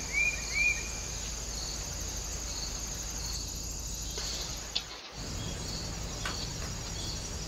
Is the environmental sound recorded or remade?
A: recorded